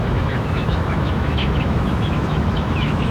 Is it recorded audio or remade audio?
remade